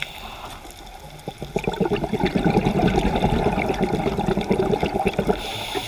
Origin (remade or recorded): recorded